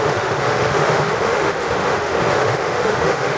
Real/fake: fake